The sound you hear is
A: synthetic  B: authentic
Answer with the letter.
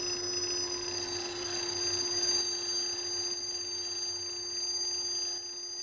B